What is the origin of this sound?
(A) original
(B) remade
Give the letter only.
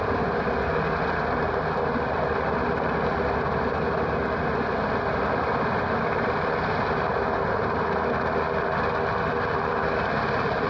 A